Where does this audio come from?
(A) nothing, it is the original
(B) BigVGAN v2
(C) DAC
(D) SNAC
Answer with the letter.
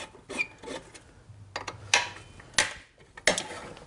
A